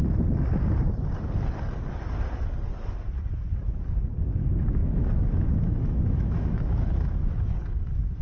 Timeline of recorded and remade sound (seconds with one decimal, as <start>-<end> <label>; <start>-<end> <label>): 0.0-4.8 recorded; 4.8-7.4 remade; 7.4-8.2 recorded